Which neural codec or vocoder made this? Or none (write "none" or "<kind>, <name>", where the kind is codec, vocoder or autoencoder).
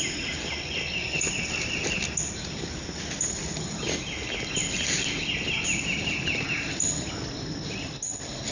none